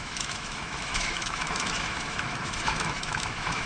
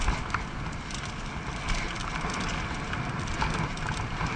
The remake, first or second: first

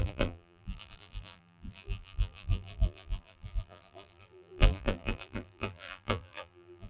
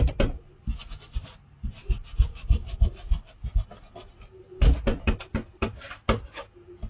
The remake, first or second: first